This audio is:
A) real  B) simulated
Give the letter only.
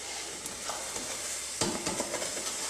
A